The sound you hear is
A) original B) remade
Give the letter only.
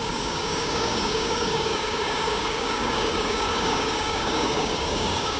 B